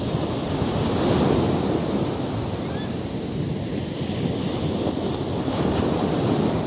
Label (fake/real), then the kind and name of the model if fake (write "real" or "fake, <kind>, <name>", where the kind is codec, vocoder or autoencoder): real